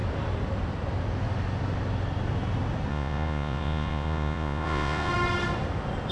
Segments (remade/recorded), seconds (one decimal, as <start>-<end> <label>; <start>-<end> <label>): 0.0-2.9 recorded; 2.9-5.1 remade; 5.1-6.1 recorded